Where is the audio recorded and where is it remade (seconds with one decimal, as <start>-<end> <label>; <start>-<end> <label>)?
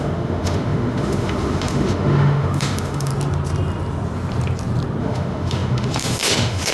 0.0-3.1 remade; 3.1-5.0 recorded; 5.0-6.7 remade